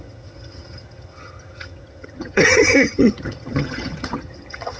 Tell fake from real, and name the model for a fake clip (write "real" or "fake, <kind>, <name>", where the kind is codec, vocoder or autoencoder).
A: fake, vocoder, HiFi-GAN